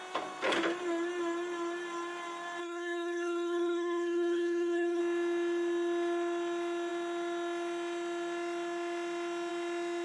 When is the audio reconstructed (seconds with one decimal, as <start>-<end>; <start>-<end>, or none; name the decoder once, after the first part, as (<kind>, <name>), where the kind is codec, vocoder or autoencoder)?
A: 2.6-5.0 (codec, SNAC)